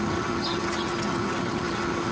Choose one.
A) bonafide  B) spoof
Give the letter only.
B